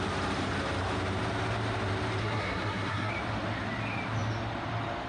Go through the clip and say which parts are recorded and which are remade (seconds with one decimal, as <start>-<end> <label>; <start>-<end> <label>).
0.0-2.2 recorded; 2.2-3.1 remade; 3.1-5.1 recorded